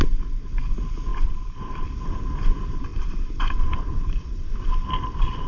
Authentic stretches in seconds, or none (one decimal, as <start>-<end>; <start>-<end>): 0.0-1.1; 1.9-2.9; 4.5-5.5